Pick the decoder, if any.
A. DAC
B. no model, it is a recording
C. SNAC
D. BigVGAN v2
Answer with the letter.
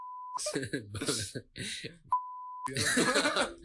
B